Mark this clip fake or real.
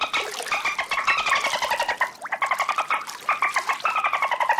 real